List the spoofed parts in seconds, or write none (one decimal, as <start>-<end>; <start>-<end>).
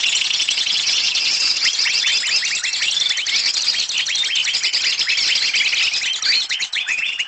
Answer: 0.0-2.1; 6.4-7.3